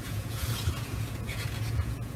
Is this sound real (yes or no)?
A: no